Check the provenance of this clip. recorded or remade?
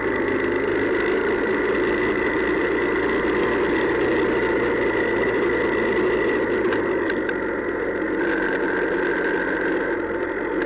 recorded